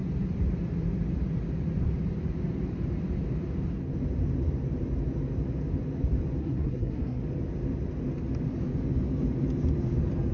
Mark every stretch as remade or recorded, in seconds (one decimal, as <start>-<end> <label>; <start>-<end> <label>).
0.0-6.4 recorded; 6.4-7.2 remade; 7.2-10.3 recorded